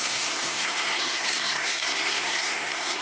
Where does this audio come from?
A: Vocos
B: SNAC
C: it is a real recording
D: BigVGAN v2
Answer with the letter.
B